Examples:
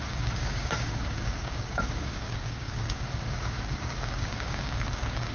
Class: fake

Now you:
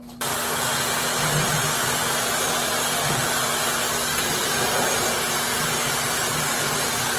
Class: real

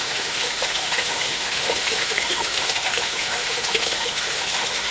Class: fake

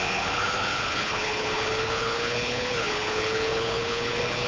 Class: fake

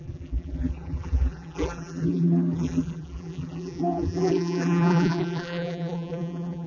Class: fake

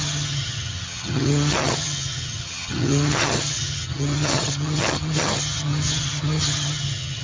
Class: fake